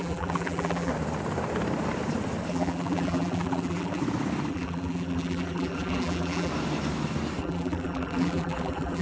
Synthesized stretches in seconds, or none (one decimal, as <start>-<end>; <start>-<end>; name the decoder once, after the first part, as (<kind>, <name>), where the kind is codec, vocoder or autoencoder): 0.0-0.9 (vocoder, BigVGAN v2); 2.5-4.0; 4.5-6.5; 7.4-9.0